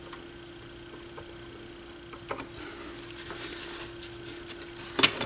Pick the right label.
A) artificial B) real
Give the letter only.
B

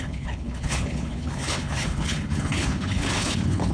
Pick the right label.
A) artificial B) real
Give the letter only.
A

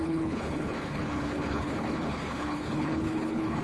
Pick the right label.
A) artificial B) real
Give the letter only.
A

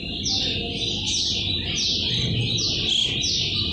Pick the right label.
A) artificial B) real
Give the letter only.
B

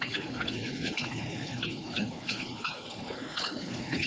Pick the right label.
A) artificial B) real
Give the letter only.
A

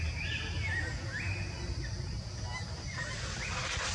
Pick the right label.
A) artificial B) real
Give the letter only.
B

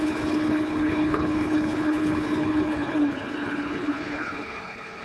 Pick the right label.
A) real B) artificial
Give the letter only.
B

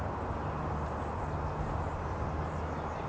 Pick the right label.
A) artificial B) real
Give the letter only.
B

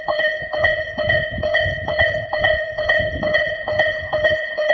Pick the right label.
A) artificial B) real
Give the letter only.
A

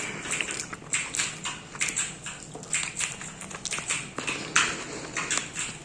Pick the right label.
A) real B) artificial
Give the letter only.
A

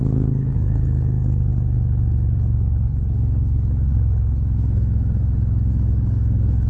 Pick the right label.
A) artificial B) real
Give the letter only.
A